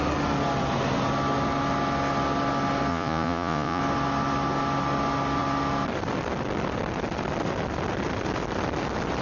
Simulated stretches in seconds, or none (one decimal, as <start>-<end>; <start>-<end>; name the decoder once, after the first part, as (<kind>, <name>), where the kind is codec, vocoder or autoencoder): 2.9-3.8 (vocoder, Vocos)